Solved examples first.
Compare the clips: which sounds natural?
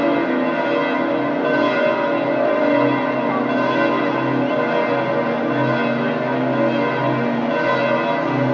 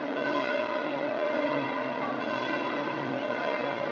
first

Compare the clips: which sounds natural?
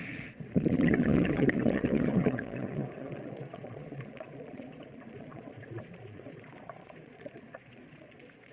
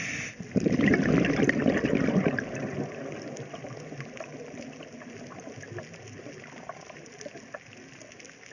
second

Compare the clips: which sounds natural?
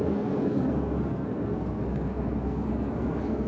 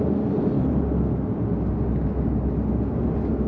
second